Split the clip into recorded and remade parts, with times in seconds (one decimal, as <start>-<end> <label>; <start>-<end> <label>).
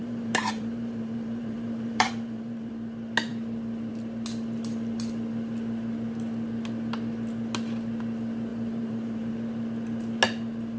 0.0-2.7 remade; 2.7-8.5 recorded; 8.5-9.3 remade; 9.3-10.8 recorded